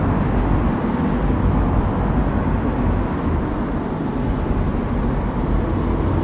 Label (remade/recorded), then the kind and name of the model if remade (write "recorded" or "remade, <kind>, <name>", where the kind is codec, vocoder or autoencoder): recorded